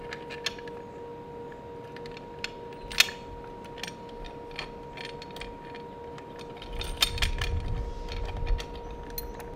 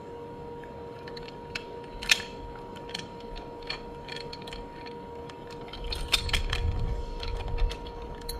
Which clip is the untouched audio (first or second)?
first